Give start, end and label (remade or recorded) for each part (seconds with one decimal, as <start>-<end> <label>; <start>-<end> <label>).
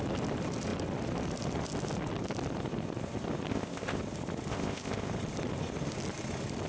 0.0-3.5 recorded; 3.5-4.0 remade; 4.0-4.5 recorded; 4.5-5.1 remade; 5.1-6.7 recorded